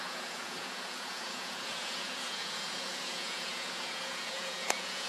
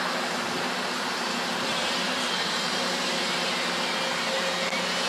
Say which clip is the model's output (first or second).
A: first